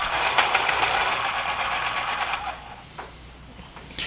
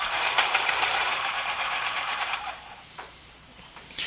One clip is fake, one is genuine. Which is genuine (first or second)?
first